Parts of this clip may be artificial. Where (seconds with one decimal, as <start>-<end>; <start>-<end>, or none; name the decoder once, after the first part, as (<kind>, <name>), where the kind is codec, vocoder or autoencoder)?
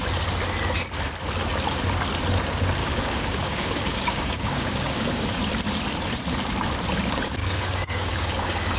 2.8-5.4 (codec, DAC); 7.4-8.8